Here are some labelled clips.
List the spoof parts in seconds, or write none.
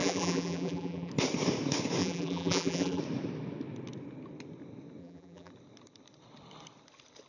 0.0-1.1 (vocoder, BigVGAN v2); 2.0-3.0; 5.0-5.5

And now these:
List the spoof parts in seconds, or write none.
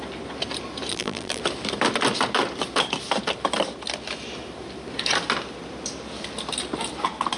0.9-1.4 (vocoder, BigVGAN v2)